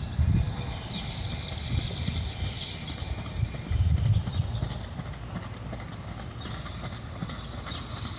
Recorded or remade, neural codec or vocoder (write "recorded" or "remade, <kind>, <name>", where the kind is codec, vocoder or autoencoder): recorded